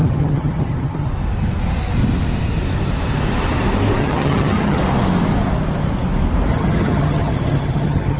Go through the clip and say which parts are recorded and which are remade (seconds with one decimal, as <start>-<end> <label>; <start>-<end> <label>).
0.0-1.1 remade; 1.1-4.0 recorded; 4.0-4.8 remade; 4.8-6.5 recorded; 6.5-8.2 remade